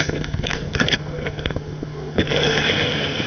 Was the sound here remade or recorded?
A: remade